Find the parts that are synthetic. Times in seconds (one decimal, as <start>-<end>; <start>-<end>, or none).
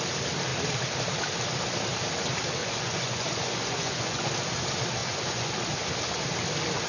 2.6-4.3; 5.0-5.5